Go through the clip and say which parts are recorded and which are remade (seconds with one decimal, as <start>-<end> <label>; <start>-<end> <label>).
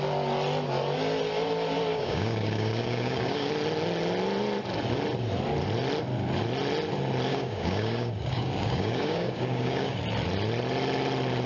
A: 0.0-1.9 recorded; 1.9-3.5 remade; 3.5-7.3 recorded; 7.3-10.0 remade; 10.0-11.5 recorded